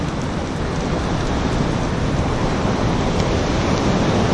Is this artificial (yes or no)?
no